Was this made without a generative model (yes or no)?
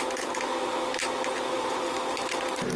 yes